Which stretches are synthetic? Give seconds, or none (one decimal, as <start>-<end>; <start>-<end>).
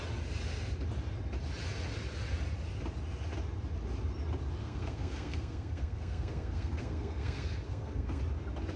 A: 4.6-8.2